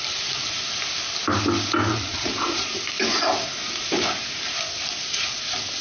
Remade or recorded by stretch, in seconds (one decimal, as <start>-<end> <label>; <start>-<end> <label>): 0.0-1.9 recorded; 1.9-2.7 remade; 2.7-5.8 recorded